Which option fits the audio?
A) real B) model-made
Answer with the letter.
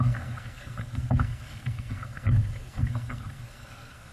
B